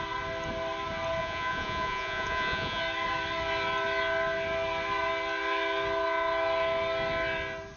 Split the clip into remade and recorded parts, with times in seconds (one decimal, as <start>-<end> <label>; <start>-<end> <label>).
0.0-1.2 recorded; 1.2-2.8 remade; 2.8-7.8 recorded